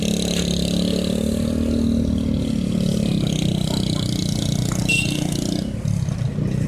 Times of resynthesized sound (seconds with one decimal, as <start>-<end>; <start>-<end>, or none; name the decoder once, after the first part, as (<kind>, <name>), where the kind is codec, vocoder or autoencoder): none